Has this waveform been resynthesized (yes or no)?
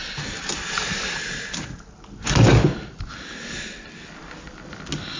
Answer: no